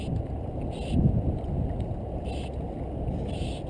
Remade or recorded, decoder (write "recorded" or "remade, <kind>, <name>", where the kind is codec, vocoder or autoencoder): recorded